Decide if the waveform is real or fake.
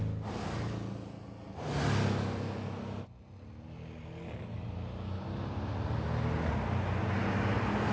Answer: real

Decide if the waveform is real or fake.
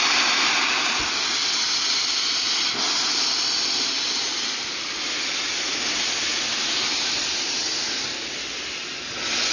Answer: real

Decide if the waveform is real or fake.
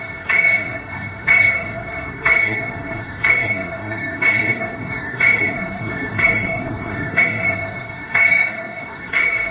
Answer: fake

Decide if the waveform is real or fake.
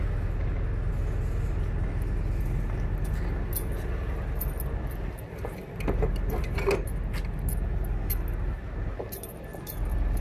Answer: real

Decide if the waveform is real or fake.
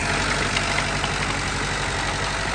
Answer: real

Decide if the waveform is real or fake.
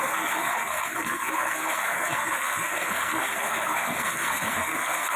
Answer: fake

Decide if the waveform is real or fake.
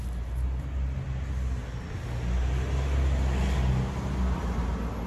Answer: real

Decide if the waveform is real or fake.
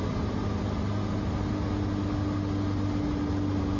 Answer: real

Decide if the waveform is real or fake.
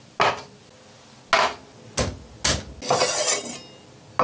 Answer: real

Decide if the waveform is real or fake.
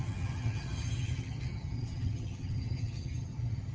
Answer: fake